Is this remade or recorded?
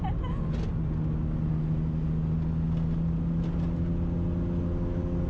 recorded